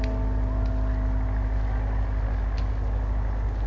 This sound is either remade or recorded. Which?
recorded